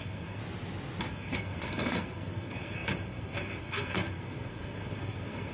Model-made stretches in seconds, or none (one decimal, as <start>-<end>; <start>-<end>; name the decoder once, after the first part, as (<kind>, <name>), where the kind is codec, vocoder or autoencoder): 0.0-0.4 (codec, SNAC); 1.1-5.5